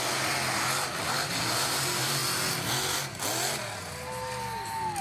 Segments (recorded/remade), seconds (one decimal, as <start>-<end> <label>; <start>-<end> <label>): 0.0-5.0 recorded